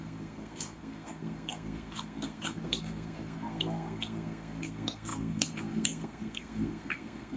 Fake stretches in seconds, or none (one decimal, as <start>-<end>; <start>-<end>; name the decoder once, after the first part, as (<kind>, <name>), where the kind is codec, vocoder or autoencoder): 0.0-7.4 (codec, SNAC)